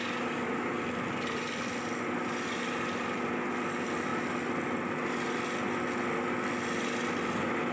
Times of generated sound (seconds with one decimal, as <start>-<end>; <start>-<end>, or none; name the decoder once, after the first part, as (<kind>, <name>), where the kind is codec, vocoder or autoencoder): none